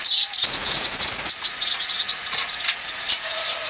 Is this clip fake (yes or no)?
yes